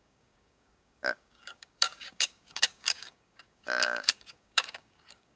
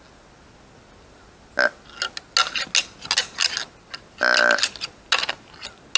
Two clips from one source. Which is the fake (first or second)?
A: first